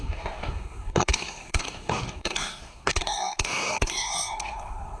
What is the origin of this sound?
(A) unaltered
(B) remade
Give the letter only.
B